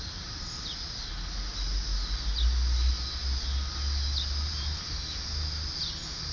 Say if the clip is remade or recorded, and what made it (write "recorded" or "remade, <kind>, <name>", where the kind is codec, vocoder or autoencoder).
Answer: recorded